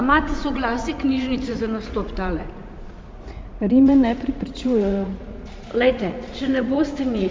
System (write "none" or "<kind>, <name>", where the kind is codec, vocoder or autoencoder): vocoder, Vocos